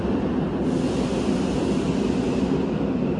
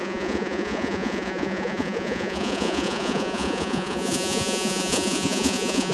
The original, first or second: first